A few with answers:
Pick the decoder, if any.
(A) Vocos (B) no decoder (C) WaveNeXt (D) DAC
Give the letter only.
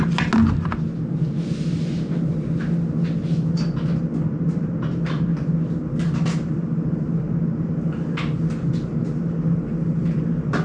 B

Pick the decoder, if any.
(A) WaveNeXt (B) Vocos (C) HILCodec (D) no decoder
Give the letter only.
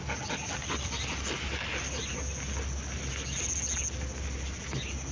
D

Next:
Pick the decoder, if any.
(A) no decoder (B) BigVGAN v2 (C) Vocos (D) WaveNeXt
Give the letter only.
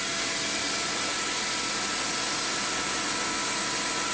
A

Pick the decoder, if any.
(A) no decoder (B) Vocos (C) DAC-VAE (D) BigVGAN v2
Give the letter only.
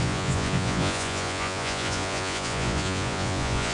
B